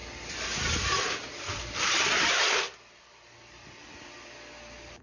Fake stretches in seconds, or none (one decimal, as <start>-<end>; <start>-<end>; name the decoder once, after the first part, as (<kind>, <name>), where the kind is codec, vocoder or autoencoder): 0.0-3.0 (vocoder, BigVGAN v2)

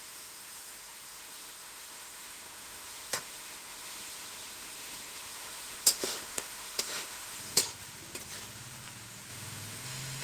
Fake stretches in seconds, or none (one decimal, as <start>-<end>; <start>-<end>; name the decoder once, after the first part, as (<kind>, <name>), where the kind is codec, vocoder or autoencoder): 0.0-7.6 (autoencoder, DAC-VAE); 9.3-10.2

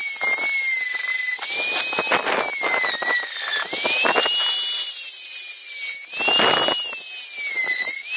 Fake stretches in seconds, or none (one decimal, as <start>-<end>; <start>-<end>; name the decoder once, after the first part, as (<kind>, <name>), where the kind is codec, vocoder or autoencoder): none

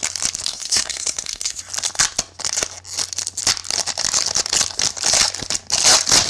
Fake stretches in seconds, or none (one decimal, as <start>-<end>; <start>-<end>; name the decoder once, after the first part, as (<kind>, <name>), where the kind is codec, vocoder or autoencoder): 0.5-1.6 (codec, SNAC)

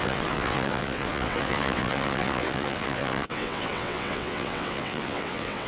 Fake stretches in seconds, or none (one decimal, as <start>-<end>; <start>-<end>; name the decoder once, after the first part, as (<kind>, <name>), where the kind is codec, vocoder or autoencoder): 0.0-5.7 (vocoder, WaveNeXt)

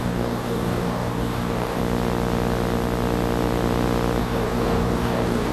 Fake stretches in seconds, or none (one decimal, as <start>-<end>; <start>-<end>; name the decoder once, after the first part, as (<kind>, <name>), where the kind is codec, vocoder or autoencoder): 0.0-1.8 (codec, DAC); 4.2-5.5

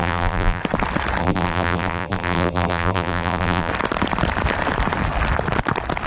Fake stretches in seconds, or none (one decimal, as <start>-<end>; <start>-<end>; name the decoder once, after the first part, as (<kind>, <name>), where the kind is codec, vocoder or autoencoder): 0.0-0.6 (vocoder, BigVGAN v2); 1.2-3.7

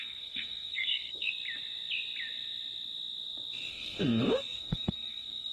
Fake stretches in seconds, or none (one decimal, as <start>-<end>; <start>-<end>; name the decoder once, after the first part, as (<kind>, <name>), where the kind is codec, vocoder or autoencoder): 0.0-1.3 (codec, SNAC); 3.7-5.5